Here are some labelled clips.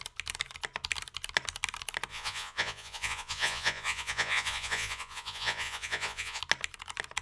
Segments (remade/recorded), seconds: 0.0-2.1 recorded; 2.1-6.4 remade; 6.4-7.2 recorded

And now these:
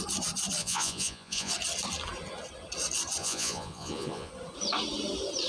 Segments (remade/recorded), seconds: 0.0-0.6 recorded; 0.6-1.5 remade; 1.5-3.2 recorded; 3.2-4.3 remade; 4.3-5.5 recorded

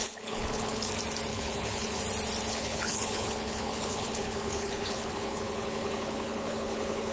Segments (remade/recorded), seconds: 0.0-0.9 remade; 0.9-1.3 recorded; 1.3-2.0 remade; 2.0-2.5 recorded; 2.5-7.1 remade

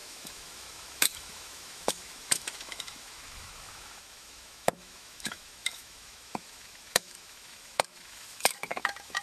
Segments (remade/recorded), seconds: 0.0-9.2 remade

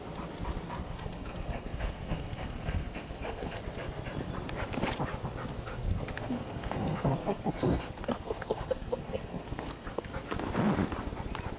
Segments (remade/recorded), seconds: 0.0-0.8 recorded; 0.8-3.6 remade; 3.6-5.8 recorded; 5.8-10.1 remade; 10.1-11.6 recorded